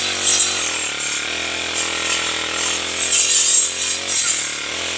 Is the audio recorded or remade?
recorded